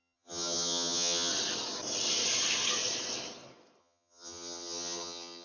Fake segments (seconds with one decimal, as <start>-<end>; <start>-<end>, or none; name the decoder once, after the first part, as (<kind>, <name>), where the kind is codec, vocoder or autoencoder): 0.0-1.3 (vocoder, HiFi-GAN); 3.8-5.4